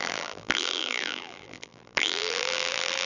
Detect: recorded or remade remade